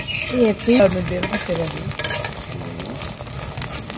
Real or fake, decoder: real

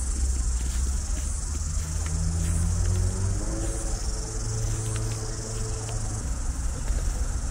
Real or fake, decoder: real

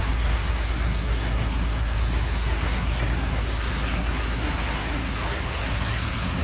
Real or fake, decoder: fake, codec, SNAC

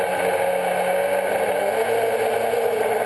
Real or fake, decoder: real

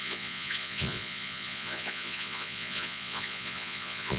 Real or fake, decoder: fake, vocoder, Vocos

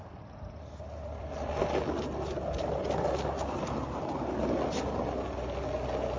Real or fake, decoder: real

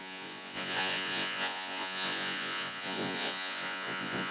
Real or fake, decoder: fake, vocoder, Vocos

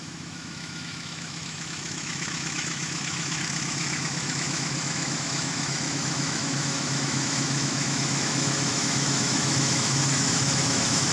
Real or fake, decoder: fake, autoencoder, DAC-VAE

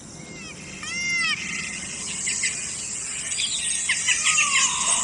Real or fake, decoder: real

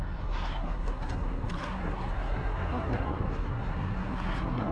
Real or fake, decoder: fake, codec, SNAC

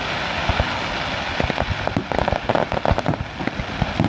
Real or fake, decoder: real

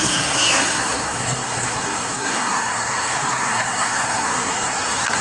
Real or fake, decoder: fake, codec, SNAC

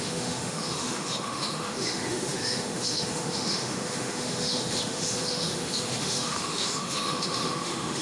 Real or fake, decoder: fake, autoencoder, DAC-VAE